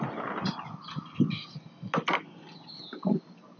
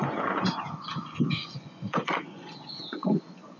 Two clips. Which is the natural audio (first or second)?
first